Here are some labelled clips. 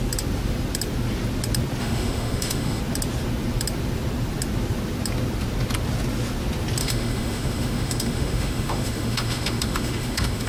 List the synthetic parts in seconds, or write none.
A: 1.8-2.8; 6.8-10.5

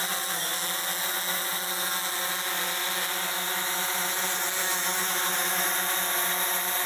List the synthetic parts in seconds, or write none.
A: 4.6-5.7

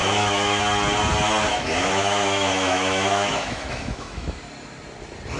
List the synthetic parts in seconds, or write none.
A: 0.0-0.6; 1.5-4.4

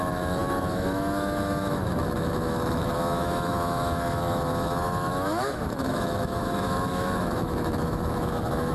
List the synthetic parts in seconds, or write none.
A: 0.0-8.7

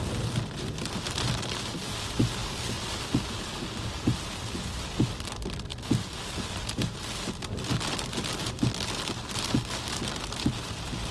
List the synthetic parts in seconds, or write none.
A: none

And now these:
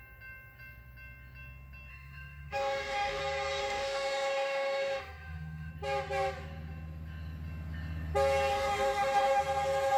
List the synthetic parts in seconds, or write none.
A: 1.9-3.2; 3.6-5.7; 8.5-9.4